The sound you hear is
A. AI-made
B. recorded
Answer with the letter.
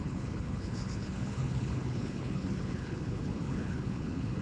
A